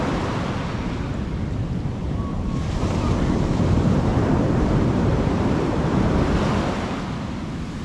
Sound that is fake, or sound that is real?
real